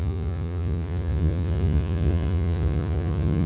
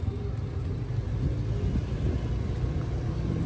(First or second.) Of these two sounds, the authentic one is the second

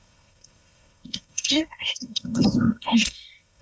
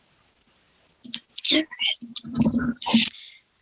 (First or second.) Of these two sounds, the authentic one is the second